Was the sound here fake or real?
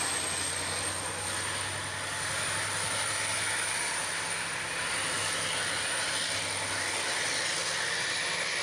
real